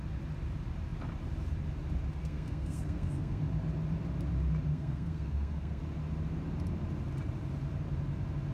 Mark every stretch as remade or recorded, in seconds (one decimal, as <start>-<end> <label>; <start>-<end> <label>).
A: 0.0-2.2 recorded; 2.2-3.4 remade; 3.4-4.7 recorded; 4.7-5.8 remade; 5.8-8.5 recorded